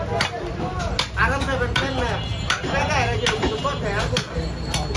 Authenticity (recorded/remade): recorded